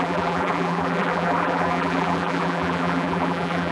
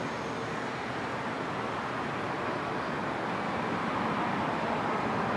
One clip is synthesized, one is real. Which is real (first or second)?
second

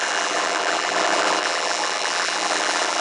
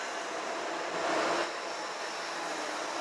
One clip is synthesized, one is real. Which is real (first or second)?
second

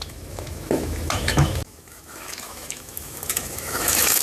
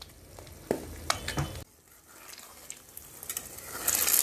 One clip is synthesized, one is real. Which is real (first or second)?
second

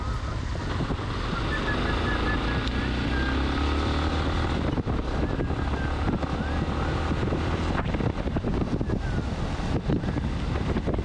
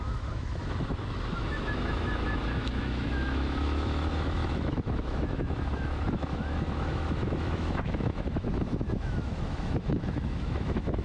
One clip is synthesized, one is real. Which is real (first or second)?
first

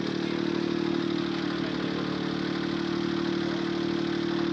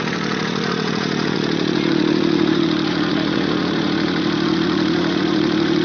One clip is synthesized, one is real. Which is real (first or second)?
first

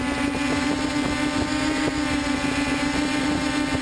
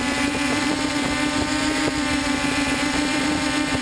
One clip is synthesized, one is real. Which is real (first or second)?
first